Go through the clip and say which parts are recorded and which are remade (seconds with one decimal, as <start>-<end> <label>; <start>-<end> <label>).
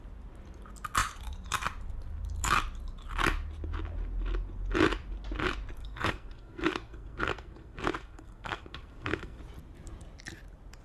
0.0-5.8 recorded; 5.8-9.4 remade; 9.4-10.8 recorded